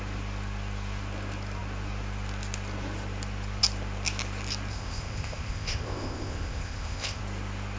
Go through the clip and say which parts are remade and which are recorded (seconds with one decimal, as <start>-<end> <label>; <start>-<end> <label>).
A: 0.0-4.7 recorded; 4.7-7.2 remade; 7.2-7.8 recorded